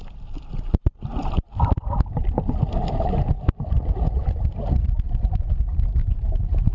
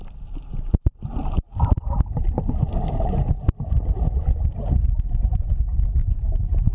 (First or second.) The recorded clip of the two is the second